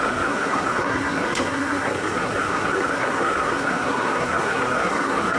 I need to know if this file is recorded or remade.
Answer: remade